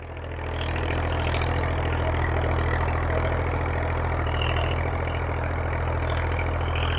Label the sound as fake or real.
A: real